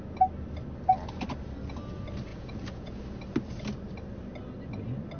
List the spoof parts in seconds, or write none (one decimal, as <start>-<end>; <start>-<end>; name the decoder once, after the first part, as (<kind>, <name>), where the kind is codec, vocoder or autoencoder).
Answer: 2.3-3.0 (vocoder, Vocos)